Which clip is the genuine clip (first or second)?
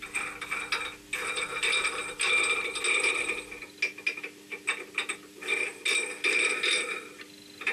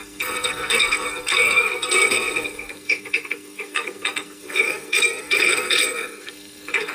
first